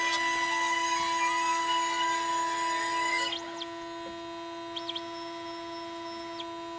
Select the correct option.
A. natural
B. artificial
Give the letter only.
A